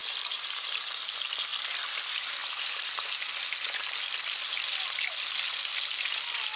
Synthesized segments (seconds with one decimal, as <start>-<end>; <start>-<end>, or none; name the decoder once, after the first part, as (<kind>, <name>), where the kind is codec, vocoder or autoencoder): 0.0-1.0 (vocoder, BigVGAN v2); 2.4-3.1